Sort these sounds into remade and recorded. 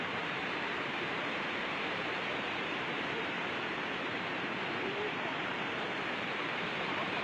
remade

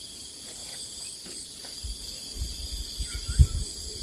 remade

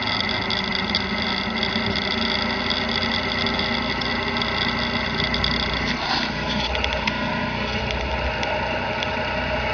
recorded